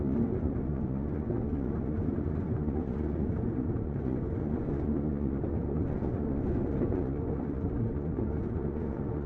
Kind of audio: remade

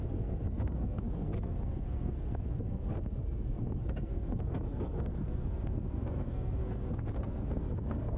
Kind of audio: remade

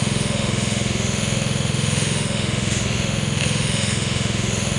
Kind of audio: remade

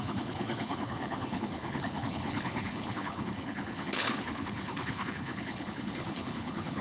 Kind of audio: remade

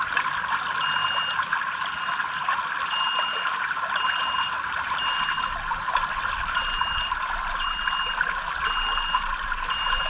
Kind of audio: recorded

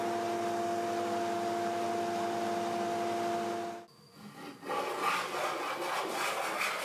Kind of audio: recorded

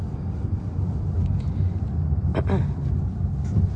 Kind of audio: recorded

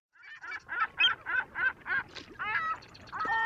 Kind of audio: recorded